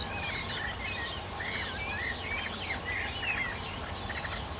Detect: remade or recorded recorded